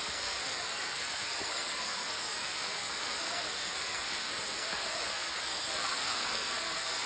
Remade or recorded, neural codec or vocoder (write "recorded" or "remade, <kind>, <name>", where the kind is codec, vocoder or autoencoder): remade, codec, SNAC